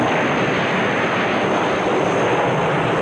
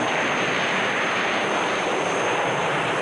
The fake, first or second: second